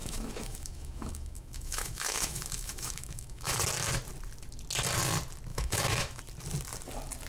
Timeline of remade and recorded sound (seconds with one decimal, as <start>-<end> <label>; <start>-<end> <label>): 0.0-3.6 remade; 3.6-5.5 recorded; 5.5-6.2 remade; 6.2-7.3 recorded